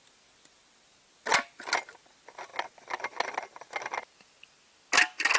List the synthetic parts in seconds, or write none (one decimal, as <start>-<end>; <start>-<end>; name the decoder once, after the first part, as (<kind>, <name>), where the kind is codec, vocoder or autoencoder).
none